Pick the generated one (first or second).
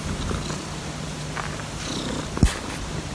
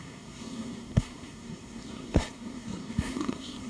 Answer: second